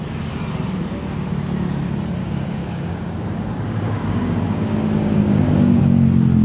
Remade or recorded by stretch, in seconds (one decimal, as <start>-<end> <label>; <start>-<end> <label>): 0.0-2.2 recorded; 2.2-5.8 remade; 5.8-6.4 recorded